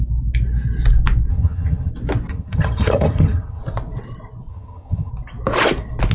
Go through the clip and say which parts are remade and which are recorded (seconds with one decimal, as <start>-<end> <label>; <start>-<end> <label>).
0.0-1.3 recorded; 1.3-1.9 remade; 1.9-2.3 recorded; 2.3-3.6 remade; 3.6-4.5 recorded; 4.5-5.1 remade; 5.1-6.1 recorded